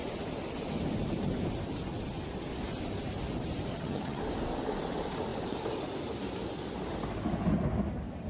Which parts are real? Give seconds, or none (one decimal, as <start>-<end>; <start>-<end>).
0.0-3.7; 4.2-8.3